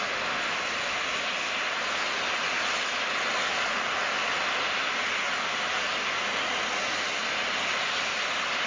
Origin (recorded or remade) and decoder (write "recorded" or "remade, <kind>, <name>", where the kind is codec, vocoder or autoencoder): recorded